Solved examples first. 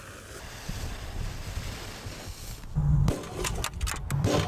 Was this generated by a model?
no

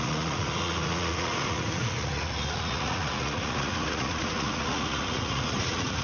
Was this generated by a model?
yes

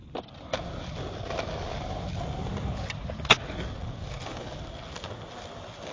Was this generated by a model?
no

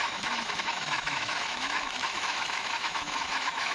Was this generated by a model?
yes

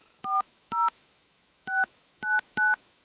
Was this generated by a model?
yes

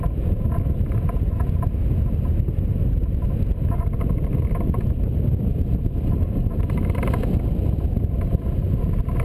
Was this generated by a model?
no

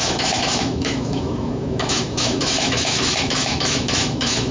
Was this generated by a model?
yes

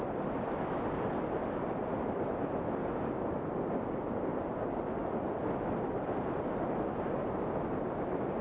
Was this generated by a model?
no